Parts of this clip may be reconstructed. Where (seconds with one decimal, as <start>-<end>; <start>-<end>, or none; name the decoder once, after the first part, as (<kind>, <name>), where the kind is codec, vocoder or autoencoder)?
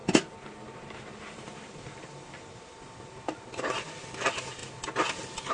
none